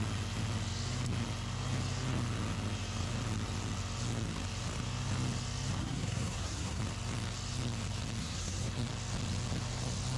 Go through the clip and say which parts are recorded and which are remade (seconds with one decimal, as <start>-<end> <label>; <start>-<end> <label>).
0.0-5.8 recorded; 5.8-6.8 remade; 6.8-8.2 recorded; 8.2-8.7 remade; 8.7-10.2 recorded